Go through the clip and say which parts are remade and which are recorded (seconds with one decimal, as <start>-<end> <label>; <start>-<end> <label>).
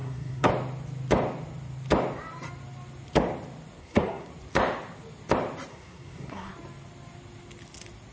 0.0-0.5 remade; 0.5-3.8 recorded; 3.8-4.3 remade; 4.3-5.7 recorded; 5.7-6.5 remade; 6.5-8.1 recorded